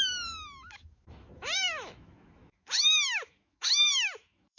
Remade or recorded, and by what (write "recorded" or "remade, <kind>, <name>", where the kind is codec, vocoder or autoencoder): remade, autoencoder, DAC-VAE